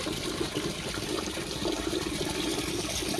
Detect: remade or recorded recorded